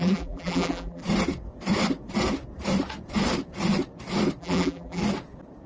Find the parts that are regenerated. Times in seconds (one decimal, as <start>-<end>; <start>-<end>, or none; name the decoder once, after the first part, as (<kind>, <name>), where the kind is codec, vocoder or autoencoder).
0.0-1.0 (vocoder, BigVGAN v2); 4.4-5.0